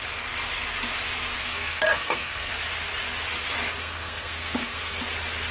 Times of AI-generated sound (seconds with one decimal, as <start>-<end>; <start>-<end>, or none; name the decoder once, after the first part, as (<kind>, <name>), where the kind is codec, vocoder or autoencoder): 1.4-2.5 (codec, SNAC); 3.8-5.0

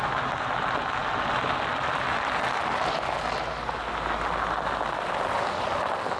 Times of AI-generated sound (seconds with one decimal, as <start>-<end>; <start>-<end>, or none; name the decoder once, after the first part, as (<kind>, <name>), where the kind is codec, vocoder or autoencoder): none

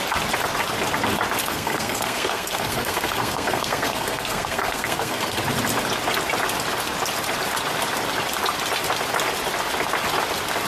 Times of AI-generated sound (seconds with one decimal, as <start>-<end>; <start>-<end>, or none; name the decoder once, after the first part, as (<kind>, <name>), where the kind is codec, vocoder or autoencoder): 1.4-5.4 (codec, SNAC)

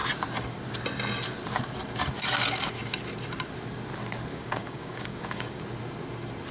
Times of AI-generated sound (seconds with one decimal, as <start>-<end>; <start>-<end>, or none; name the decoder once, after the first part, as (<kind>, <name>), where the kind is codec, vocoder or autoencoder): 4.3-5.6 (codec, DAC)

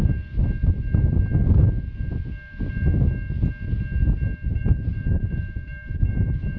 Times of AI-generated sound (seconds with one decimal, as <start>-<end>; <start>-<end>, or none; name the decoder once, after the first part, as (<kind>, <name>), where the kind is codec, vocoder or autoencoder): 4.5-6.6 (vocoder, BigVGAN v2)